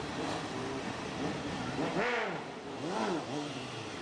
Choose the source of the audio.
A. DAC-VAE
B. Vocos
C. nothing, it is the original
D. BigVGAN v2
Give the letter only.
D